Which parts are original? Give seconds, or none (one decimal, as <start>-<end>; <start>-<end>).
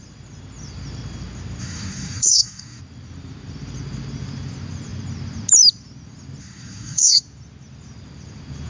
0.0-1.6; 2.8-6.4; 7.2-8.7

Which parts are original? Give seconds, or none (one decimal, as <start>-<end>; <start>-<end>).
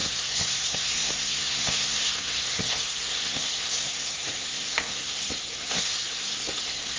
none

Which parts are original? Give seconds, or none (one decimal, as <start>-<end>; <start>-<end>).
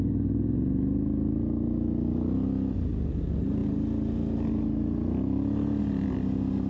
0.0-6.7